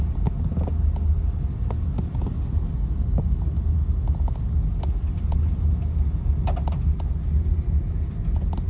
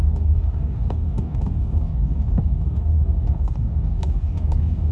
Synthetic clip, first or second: second